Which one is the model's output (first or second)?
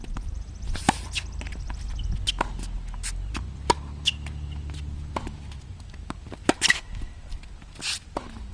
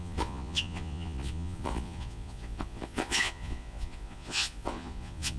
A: second